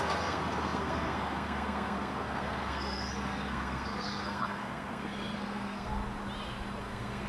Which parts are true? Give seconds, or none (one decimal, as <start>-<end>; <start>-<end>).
6.0-6.8